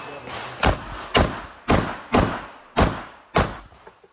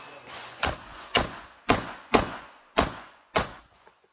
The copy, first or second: second